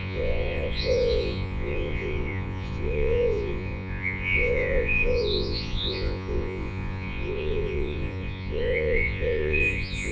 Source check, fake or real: fake